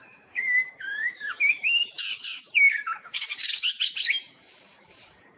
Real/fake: fake